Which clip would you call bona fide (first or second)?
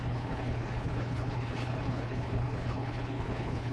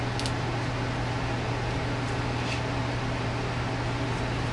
second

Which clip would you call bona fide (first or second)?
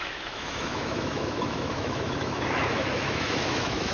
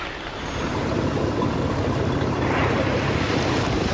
second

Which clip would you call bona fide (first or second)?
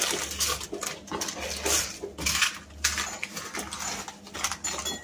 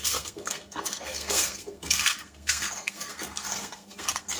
first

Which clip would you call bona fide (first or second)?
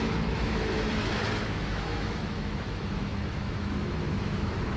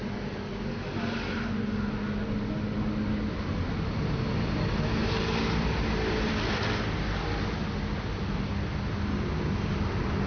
second